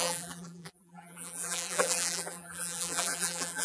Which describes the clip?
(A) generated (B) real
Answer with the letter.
A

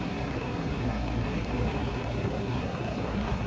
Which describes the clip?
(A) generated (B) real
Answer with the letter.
A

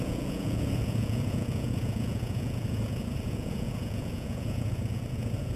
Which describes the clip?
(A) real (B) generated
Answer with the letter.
B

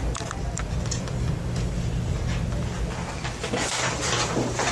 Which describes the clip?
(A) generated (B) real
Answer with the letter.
A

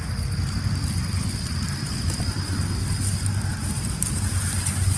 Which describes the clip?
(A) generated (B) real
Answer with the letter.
B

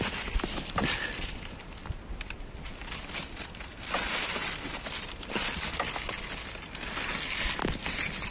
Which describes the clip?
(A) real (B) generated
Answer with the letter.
A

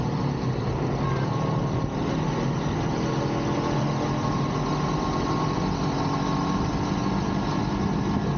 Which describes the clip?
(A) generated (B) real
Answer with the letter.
B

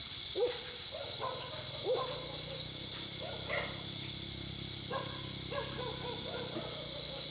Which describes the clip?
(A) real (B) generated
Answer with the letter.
A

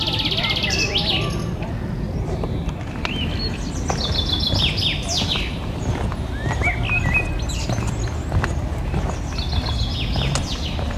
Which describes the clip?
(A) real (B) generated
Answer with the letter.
A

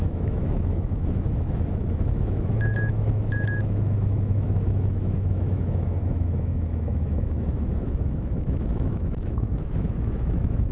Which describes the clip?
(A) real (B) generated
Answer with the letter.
B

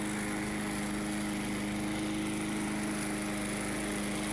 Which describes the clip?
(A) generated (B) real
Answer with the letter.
B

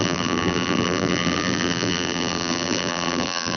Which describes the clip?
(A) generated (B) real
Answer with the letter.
A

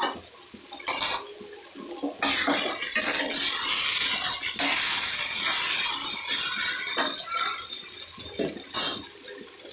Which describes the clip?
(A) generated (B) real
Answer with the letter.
B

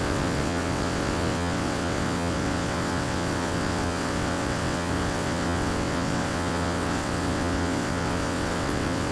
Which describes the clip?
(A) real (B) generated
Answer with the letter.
B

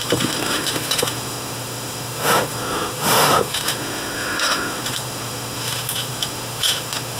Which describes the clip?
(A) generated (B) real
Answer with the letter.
A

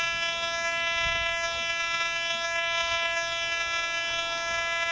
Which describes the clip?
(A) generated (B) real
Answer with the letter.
B